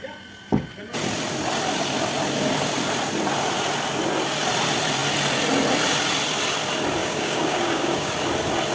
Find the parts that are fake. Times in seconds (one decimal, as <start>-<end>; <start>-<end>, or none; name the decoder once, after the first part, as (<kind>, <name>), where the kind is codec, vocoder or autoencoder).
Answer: 7.0-8.1 (codec, DAC)